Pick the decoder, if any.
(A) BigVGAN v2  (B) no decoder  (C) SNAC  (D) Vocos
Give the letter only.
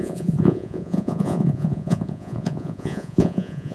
D